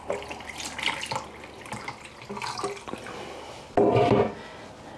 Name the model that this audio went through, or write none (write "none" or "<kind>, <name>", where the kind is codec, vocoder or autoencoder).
none